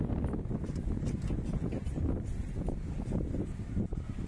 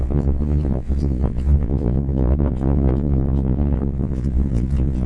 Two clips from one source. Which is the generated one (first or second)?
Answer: second